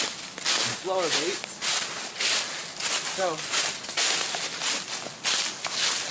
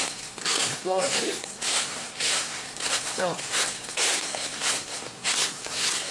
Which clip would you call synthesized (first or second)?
second